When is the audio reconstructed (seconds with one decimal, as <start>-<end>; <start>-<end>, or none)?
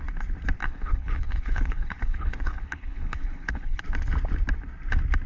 0.6-3.8